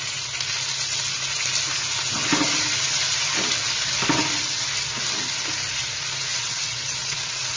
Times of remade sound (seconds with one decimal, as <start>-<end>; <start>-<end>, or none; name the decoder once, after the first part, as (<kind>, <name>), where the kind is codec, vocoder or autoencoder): 6.3-7.6 (vocoder, WaveNeXt)

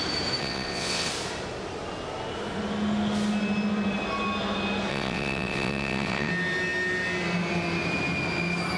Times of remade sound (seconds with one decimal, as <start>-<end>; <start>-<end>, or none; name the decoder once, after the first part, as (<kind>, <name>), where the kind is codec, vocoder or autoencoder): 0.4-1.1 (vocoder, WaveNeXt); 4.9-6.3

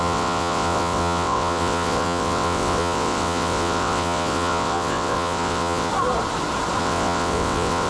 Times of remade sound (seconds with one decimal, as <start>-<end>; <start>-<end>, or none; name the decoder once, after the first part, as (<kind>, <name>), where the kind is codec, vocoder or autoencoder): 0.0-5.9 (vocoder, WaveNeXt); 6.8-7.9

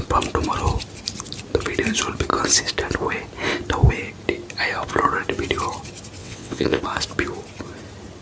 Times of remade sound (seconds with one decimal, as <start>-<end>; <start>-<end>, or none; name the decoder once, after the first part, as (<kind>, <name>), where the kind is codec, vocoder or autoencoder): 6.2-6.8 (vocoder, WaveNeXt)

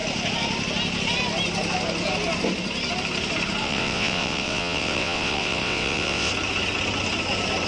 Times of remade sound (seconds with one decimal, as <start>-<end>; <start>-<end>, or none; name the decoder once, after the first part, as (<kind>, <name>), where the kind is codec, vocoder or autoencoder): 3.6-6.3 (vocoder, WaveNeXt)

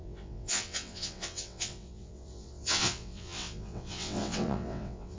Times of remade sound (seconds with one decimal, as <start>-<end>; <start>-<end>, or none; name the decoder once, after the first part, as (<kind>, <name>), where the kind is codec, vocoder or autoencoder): 0.0-5.2 (vocoder, WaveNeXt)

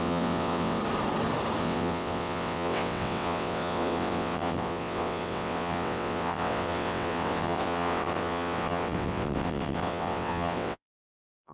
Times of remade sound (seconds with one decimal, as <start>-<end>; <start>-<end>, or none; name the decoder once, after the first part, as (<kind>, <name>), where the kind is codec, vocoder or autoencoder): 0.0-0.8 (vocoder, WaveNeXt); 1.6-11.5

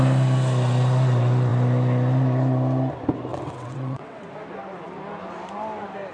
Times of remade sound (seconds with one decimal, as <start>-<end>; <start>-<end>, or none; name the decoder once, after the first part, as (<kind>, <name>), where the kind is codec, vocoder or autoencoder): 3.3-4.3 (vocoder, WaveNeXt)